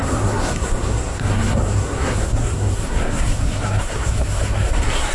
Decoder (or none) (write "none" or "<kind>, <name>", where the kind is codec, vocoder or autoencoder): codec, SNAC